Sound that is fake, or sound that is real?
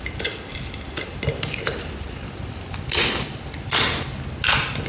real